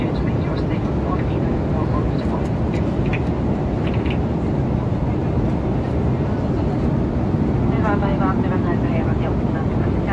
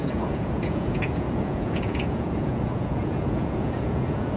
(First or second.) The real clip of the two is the first